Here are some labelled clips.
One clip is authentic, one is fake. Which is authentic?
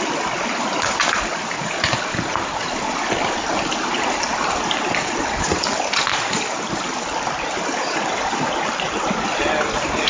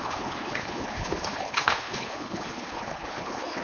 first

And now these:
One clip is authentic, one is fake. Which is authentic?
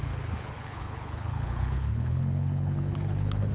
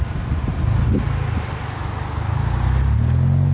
second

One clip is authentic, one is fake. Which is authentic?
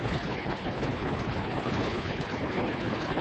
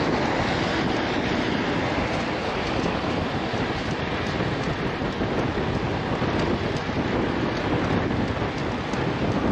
second